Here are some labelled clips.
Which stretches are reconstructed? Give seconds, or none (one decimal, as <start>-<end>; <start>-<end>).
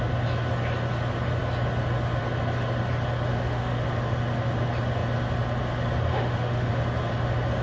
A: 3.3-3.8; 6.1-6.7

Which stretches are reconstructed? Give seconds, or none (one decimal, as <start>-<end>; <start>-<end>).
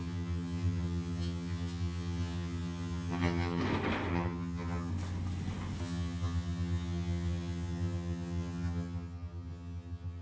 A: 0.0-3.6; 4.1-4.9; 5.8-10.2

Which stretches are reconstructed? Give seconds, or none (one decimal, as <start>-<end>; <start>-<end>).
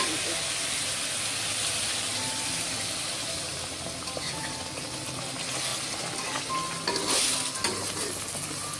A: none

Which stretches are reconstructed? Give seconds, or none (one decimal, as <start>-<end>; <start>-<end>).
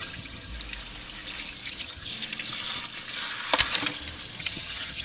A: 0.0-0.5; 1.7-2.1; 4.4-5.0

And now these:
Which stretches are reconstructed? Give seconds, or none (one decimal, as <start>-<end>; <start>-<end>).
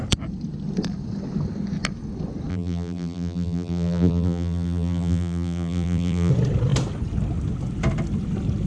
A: 2.5-6.3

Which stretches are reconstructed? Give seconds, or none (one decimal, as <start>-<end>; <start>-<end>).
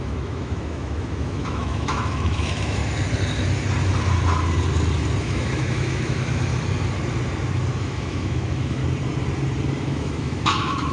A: 0.0-2.8; 5.2-6.5; 7.8-8.8; 9.8-10.9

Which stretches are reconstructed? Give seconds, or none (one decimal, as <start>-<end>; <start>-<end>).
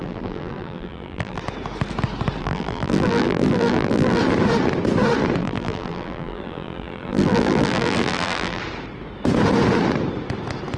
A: 0.0-1.4; 2.4-4.2; 5.4-8.6